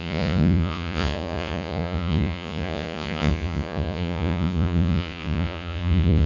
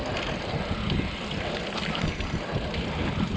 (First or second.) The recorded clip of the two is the second